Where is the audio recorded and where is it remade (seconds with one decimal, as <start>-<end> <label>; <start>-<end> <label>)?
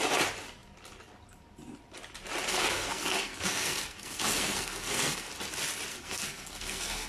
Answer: 0.0-2.5 recorded; 2.5-5.3 remade; 5.3-5.9 recorded; 5.9-7.1 remade